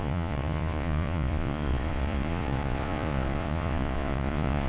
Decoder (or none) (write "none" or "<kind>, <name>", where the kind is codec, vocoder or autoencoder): vocoder, Vocos